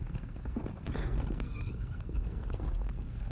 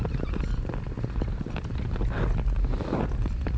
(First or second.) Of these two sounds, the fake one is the first